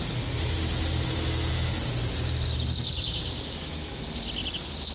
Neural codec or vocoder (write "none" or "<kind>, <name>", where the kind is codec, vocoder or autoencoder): none